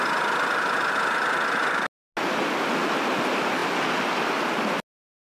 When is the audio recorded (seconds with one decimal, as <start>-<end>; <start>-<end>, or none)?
0.0-5.3